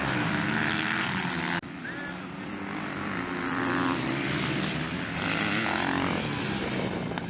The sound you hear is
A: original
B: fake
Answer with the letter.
A